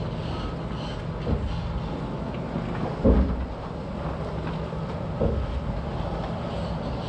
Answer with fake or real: real